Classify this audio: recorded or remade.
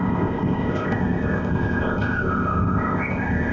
remade